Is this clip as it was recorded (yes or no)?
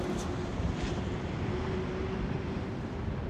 yes